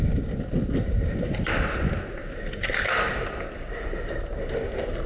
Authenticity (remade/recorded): recorded